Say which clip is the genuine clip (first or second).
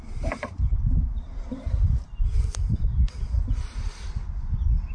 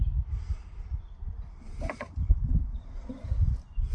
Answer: first